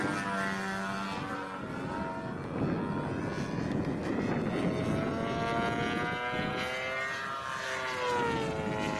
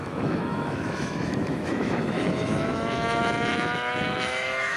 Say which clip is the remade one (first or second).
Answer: second